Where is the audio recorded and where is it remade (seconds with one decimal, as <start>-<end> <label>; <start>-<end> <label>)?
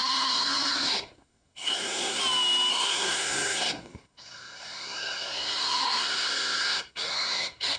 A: 0.0-2.2 remade; 2.2-2.7 recorded; 2.7-7.8 remade